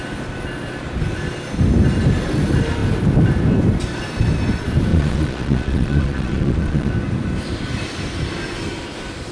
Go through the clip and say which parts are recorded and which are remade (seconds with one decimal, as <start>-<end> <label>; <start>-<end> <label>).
0.0-4.9 recorded; 4.9-6.9 remade; 6.9-9.3 recorded